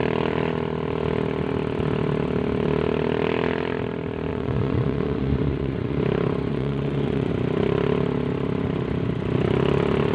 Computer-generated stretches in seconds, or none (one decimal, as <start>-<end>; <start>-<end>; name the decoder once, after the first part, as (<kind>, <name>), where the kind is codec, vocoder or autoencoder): 4.3-6.0 (vocoder, Vocos); 6.5-7.3